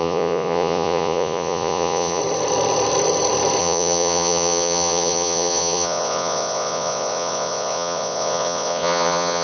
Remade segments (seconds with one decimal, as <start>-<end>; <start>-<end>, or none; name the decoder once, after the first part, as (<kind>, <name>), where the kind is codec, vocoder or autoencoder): 0.0-2.2 (vocoder, Vocos); 3.6-9.4

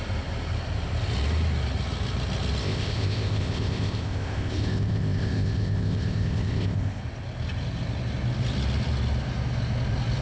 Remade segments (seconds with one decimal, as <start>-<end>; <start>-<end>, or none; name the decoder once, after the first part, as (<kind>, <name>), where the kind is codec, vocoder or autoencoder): 2.6-7.0 (codec, ZipCodec)

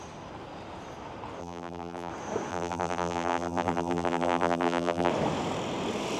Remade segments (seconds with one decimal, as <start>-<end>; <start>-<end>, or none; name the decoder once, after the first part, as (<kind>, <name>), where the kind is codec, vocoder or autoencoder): 1.4-2.1 (vocoder, BigVGAN v2); 2.5-5.1

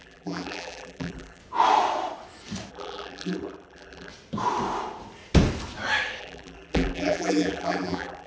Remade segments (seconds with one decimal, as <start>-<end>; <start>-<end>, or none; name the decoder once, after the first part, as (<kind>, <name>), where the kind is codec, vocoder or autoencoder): 0.0-1.4 (vocoder, BigVGAN v2); 2.7-4.1; 6.2-8.3

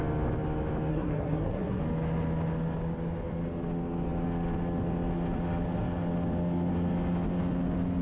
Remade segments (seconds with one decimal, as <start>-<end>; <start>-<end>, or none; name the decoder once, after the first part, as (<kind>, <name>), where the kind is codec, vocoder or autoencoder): 0.9-1.8 (codec, SNAC)

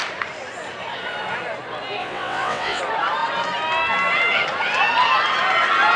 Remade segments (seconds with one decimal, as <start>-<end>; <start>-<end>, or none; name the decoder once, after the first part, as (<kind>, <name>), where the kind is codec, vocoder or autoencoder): 2.0-2.8 (vocoder, WaveNeXt)

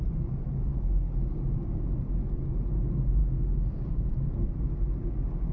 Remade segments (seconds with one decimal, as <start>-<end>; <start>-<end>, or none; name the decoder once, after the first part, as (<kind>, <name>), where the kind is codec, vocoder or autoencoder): 3.2-4.3 (codec, DAC)